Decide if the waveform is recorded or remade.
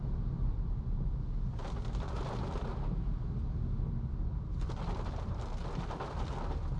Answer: recorded